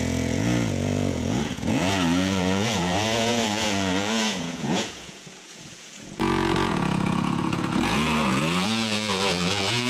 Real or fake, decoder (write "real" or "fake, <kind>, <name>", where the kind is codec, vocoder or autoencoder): fake, vocoder, Vocos